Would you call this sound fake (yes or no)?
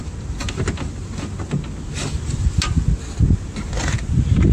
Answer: no